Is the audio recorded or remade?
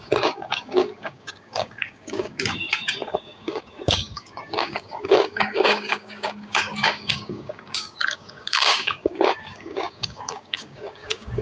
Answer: remade